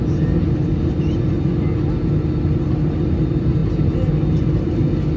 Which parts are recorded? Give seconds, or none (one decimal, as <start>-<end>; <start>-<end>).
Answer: 0.0-5.2